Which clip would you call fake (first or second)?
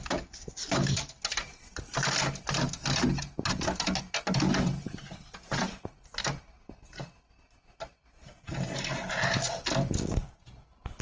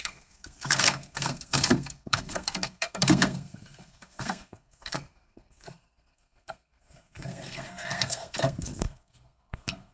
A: second